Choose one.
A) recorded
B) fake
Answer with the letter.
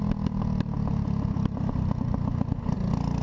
A